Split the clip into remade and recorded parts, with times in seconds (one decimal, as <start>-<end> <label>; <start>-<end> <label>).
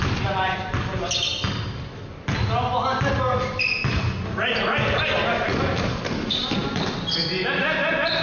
0.0-8.2 recorded